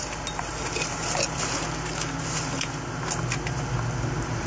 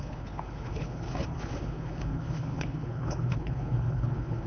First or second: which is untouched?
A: first